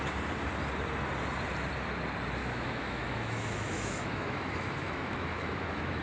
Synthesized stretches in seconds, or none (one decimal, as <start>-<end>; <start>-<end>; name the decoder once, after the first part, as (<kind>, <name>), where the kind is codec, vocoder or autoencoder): 2.4-6.0 (autoencoder, DAC-VAE)